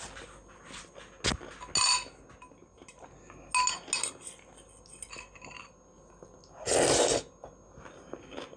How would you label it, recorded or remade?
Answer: recorded